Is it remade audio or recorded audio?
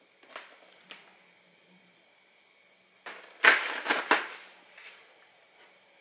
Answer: recorded